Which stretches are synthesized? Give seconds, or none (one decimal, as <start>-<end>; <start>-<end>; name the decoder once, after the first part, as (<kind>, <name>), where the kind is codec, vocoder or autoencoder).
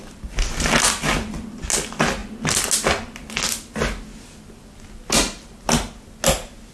none